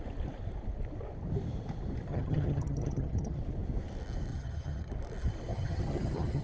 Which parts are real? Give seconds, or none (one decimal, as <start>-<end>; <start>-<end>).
0.0-2.1; 3.4-4.3; 4.9-5.5